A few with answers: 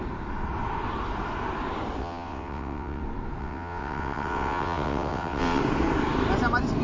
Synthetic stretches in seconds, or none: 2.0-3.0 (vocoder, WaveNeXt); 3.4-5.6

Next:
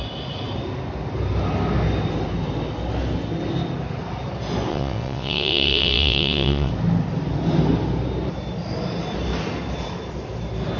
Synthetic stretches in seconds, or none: 4.7-6.7 (vocoder, WaveNeXt)

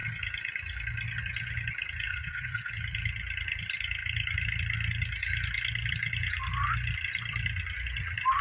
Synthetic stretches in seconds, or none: 2.1-2.7 (vocoder, WaveNeXt)

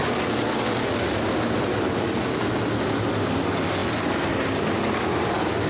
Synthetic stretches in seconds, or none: none